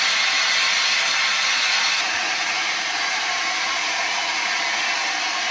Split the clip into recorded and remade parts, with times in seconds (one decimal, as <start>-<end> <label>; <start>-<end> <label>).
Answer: 0.0-1.3 recorded; 1.3-4.6 remade; 4.6-5.5 recorded

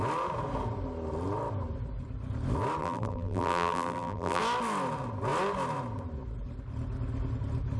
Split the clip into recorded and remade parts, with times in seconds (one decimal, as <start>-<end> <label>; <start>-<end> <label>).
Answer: 0.0-2.8 recorded; 2.8-4.4 remade; 4.4-7.8 recorded